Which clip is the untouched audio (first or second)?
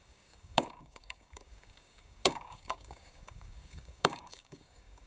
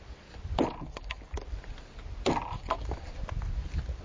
second